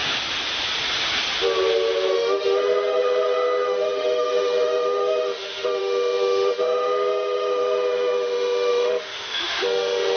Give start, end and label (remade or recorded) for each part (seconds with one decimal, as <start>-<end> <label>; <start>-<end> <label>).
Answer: 0.0-2.1 recorded; 2.1-10.2 remade